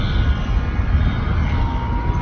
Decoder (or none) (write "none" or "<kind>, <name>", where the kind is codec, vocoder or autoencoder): none